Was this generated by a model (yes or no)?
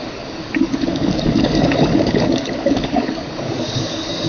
yes